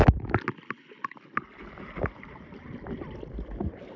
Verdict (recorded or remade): recorded